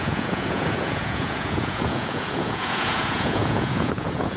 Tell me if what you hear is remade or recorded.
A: remade